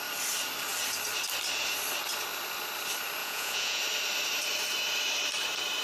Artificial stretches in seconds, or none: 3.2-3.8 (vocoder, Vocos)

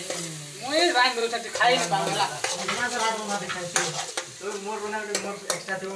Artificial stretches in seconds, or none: none

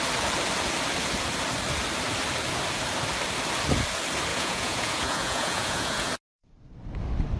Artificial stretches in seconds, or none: 4.3-6.1 (vocoder, Vocos)